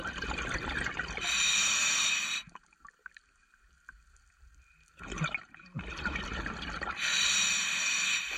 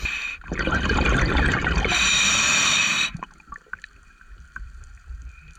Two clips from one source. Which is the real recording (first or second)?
first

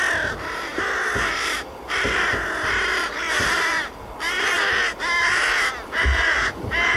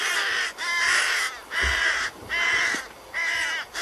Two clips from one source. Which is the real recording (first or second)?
second